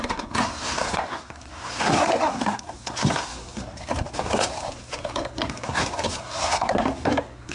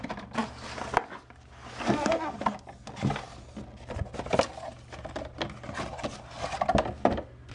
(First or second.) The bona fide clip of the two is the second